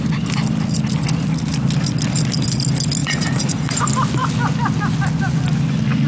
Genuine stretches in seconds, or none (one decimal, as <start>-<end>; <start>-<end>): 0.0-3.0; 3.8-6.1